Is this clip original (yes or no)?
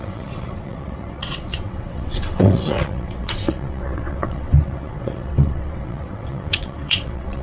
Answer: no